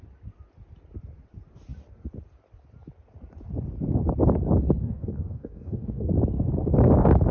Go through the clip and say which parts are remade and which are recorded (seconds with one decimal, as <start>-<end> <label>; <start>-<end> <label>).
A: 0.0-4.8 recorded; 4.8-6.1 remade; 6.1-7.3 recorded